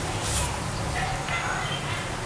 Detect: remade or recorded recorded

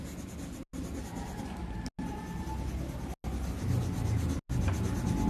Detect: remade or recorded recorded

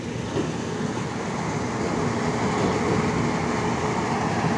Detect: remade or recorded recorded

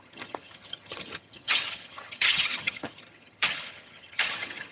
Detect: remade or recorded remade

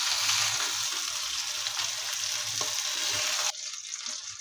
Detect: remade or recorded recorded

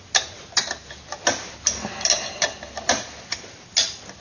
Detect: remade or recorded recorded